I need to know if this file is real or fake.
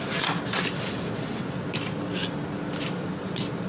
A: real